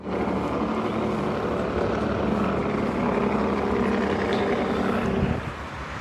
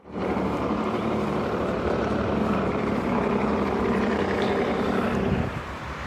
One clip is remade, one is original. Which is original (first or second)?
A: first